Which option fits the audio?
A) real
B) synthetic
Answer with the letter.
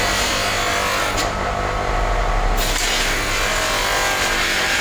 A